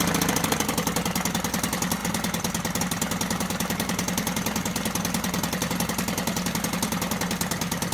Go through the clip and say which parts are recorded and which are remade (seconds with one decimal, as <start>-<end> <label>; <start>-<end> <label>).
0.0-7.9 recorded